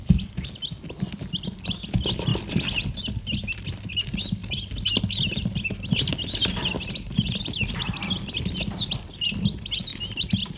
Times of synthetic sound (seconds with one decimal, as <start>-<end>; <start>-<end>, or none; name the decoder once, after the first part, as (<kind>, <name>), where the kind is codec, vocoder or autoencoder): none